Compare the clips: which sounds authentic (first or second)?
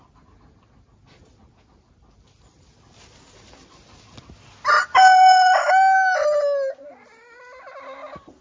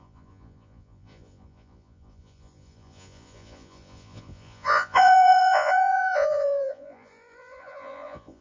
first